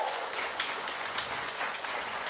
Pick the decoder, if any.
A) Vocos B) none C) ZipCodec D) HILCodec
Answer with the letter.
A